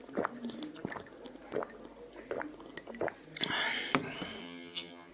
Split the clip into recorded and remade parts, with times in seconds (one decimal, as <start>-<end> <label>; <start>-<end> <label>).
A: 0.0-4.4 recorded; 4.4-5.1 remade